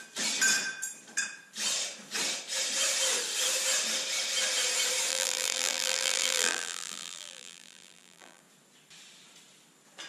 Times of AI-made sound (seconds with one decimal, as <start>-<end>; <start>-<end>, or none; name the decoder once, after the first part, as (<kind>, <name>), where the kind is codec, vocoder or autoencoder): 5.1-8.4 (vocoder, BigVGAN v2)